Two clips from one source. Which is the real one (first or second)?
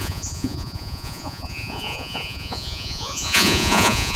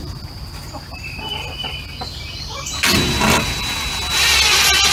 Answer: second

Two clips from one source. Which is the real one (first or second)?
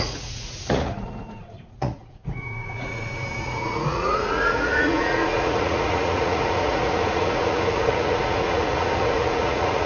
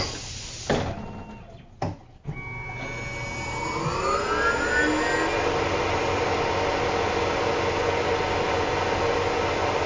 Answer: second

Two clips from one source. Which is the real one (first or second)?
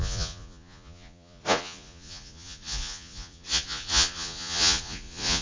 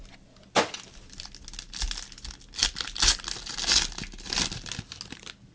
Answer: second